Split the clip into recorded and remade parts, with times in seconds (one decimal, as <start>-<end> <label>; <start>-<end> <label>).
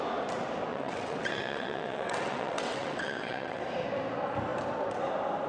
0.0-0.7 recorded; 0.7-3.6 remade; 3.6-5.5 recorded